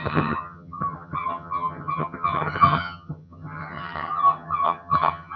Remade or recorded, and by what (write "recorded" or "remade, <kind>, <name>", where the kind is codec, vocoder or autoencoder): remade, vocoder, HiFi-GAN